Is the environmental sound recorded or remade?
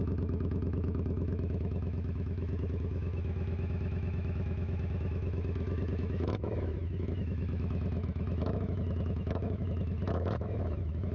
remade